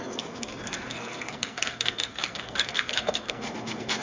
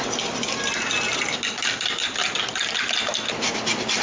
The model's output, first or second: first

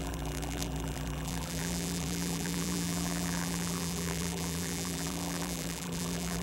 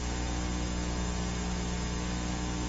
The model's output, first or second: first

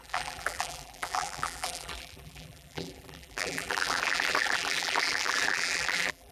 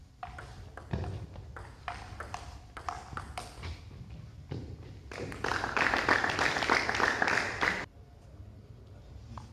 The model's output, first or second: first